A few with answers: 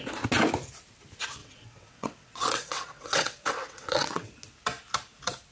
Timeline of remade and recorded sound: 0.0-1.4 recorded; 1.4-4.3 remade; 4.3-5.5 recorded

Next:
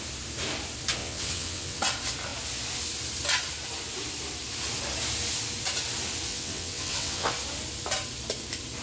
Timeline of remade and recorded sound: 0.0-1.0 recorded; 1.0-1.8 remade; 1.8-6.3 recorded; 6.3-7.3 remade; 7.3-8.8 recorded

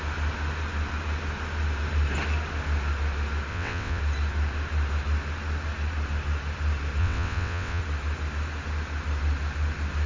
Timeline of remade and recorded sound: 0.0-3.5 recorded; 3.5-4.0 remade; 4.0-7.0 recorded; 7.0-7.8 remade; 7.8-10.1 recorded

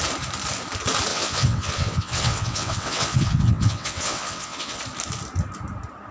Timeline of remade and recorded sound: 0.0-1.1 recorded; 1.1-4.8 remade; 4.8-6.1 recorded

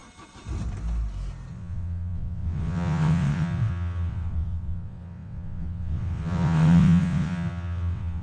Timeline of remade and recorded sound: 0.0-1.5 recorded; 1.5-8.2 remade